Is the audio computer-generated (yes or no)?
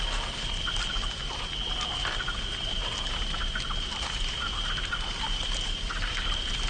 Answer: yes